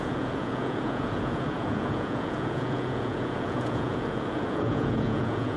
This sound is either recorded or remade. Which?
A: remade